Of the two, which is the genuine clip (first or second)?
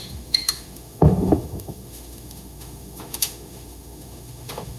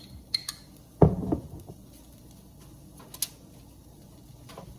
second